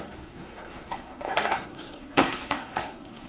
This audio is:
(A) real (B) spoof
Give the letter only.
B